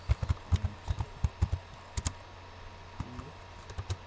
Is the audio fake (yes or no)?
no